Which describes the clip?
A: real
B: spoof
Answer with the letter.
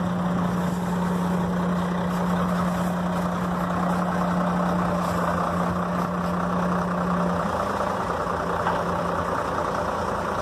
A